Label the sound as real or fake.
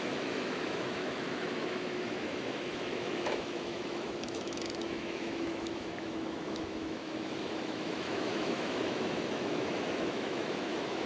fake